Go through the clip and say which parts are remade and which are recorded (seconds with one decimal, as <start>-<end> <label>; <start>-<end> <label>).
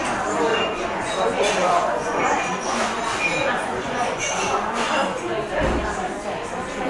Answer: 0.0-0.5 recorded; 0.5-3.0 remade; 3.0-3.4 recorded; 3.4-5.4 remade; 5.4-6.9 recorded